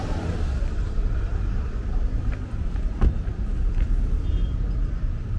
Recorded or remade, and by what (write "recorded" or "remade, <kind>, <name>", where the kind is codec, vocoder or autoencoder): remade, vocoder, BigVGAN v2